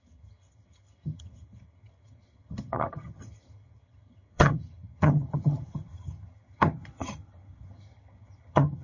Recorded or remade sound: remade